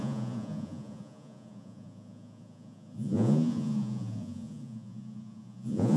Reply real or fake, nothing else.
fake